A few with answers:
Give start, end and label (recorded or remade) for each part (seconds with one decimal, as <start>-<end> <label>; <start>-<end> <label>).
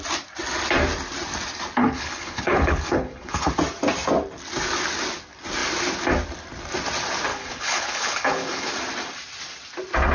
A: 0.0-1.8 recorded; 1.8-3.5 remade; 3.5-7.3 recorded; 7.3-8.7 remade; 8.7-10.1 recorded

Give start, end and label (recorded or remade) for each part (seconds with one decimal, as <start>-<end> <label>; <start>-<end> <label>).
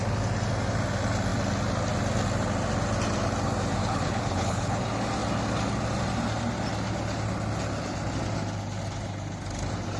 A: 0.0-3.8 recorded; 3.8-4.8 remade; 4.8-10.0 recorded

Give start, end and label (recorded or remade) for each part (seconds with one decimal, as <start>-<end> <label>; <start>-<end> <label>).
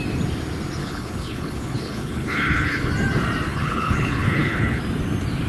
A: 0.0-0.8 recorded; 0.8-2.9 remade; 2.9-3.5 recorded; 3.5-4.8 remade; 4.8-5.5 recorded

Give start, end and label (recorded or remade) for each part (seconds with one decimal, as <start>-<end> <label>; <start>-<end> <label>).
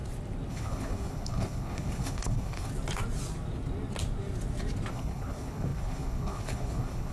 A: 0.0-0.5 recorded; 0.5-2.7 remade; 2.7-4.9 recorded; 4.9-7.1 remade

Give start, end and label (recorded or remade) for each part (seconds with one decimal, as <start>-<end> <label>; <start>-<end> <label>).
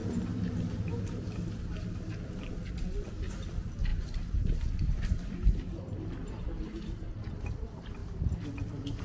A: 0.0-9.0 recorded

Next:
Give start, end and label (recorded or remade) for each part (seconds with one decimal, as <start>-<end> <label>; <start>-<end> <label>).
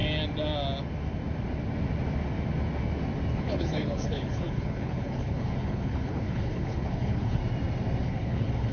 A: 0.0-3.4 recorded; 3.4-7.4 remade; 7.4-8.0 recorded; 8.0-8.7 remade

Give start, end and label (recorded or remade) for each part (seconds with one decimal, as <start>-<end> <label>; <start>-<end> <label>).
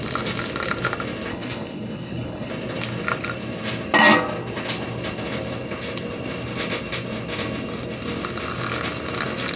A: 0.0-1.3 recorded; 1.3-2.5 remade; 2.5-9.6 recorded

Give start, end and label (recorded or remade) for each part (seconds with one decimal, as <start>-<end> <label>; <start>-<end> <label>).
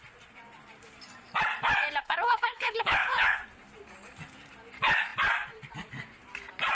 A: 0.0-2.0 recorded; 2.0-3.4 remade; 3.4-6.7 recorded